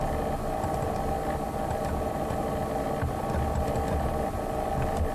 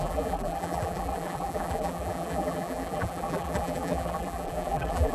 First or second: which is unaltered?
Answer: first